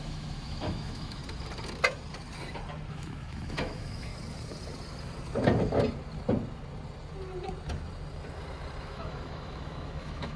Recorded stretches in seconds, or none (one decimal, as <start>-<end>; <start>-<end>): 1.2-2.9; 4.1-8.8